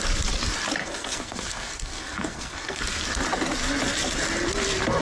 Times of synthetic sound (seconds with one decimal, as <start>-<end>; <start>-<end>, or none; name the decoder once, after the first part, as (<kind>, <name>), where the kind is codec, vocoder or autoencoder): 0.8-2.8 (codec, SNAC)